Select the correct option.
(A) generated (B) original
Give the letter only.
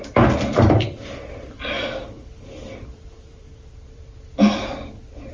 A